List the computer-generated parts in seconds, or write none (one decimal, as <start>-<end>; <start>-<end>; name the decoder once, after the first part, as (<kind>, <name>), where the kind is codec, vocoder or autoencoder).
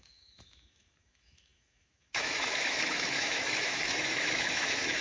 0.0-5.0 (autoencoder, DAC-VAE)